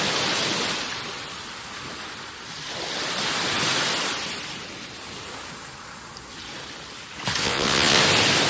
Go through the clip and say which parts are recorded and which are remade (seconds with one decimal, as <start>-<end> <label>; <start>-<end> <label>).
0.0-7.4 recorded; 7.4-8.0 remade; 8.0-8.5 recorded